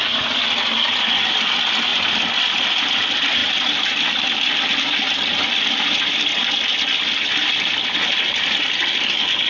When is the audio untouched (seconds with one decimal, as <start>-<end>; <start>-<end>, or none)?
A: 0.0-3.4; 4.1-9.5